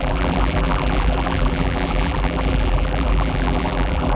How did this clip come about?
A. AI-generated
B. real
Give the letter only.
A